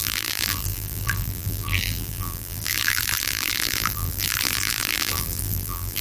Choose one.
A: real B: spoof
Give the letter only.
B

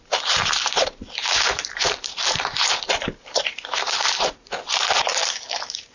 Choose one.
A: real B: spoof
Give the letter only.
B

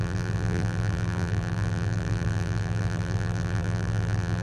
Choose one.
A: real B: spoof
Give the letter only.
B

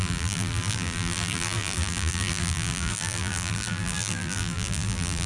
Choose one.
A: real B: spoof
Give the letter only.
B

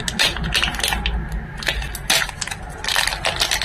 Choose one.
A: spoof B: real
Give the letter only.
B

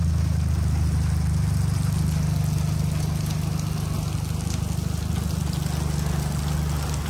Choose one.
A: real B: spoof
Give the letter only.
A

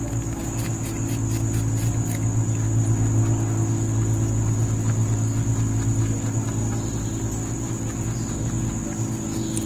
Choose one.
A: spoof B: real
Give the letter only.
B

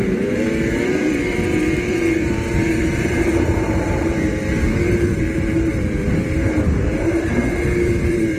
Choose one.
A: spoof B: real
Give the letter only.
A